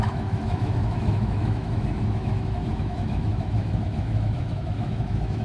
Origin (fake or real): fake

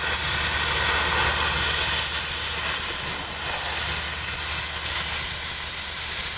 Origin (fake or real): real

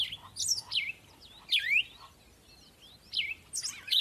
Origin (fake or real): real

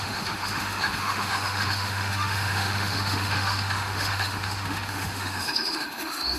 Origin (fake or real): fake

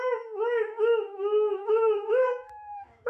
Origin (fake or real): fake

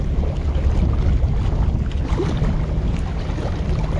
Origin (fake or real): real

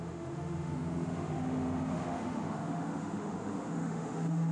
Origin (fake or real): fake